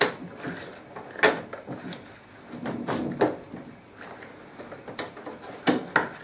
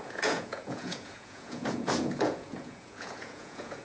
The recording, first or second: first